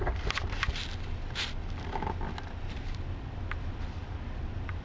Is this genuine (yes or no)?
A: yes